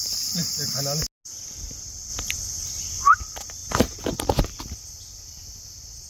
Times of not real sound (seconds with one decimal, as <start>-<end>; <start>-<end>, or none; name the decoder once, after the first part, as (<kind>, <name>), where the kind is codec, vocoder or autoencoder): 0.0-0.4 (vocoder, BigVGAN v2); 1.4-6.1